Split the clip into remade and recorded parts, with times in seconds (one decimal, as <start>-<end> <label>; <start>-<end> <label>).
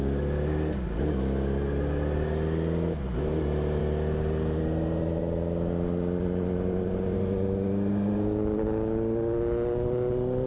0.0-10.5 recorded